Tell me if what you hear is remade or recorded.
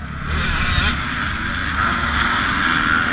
recorded